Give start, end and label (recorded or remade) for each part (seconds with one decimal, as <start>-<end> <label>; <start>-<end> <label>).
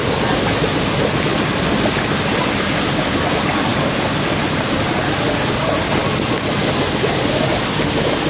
0.0-8.3 recorded